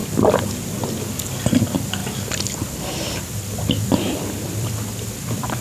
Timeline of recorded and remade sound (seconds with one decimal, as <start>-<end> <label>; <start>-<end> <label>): 0.0-0.8 remade; 0.8-2.0 recorded; 2.0-5.6 remade